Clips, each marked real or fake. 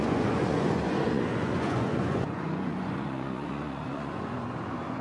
fake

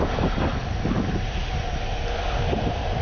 real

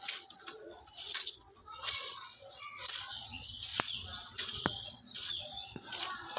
fake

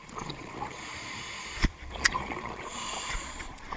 fake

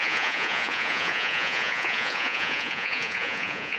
fake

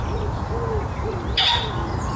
real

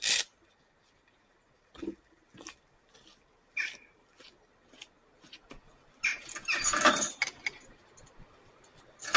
real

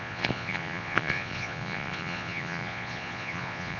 fake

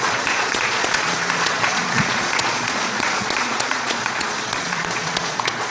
fake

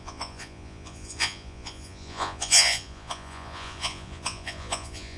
fake